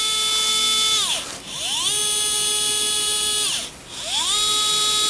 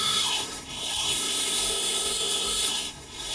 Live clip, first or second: first